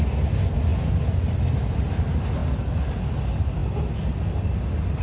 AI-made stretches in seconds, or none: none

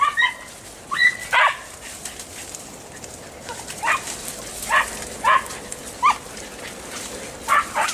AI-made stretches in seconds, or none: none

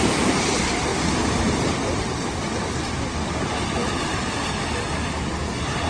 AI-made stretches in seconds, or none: 0.9-2.1 (vocoder, BigVGAN v2)

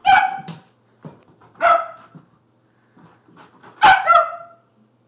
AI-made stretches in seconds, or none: 0.0-2.2 (vocoder, BigVGAN v2); 4.2-5.1